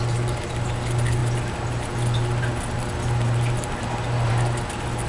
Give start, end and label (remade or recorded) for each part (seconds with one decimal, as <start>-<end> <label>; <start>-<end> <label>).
0.0-5.1 recorded